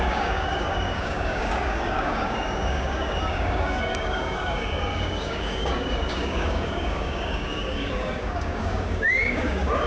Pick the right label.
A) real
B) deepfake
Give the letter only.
B